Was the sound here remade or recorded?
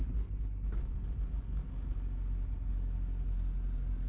recorded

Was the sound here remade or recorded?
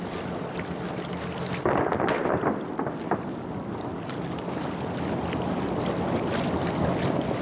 recorded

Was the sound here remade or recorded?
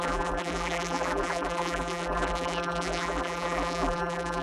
remade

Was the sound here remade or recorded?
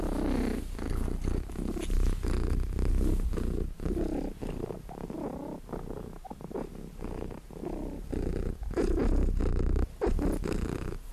recorded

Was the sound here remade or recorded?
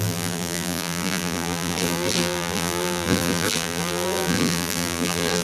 remade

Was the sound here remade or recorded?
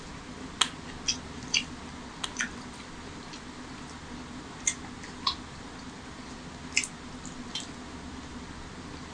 recorded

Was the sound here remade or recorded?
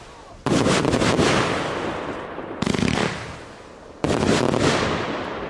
remade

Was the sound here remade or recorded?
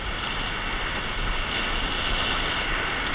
recorded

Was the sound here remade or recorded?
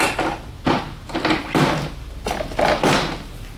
recorded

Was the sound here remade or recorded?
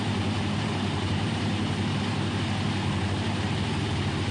remade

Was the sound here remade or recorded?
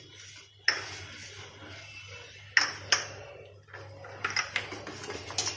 recorded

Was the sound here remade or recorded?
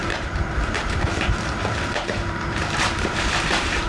remade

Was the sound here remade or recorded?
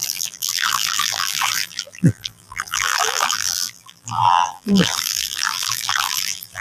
remade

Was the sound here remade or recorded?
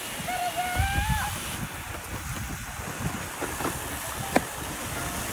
recorded